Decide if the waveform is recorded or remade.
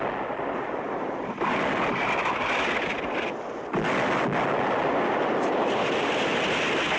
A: recorded